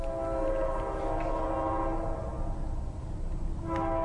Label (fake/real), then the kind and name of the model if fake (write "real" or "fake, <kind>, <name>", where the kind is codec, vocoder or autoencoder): real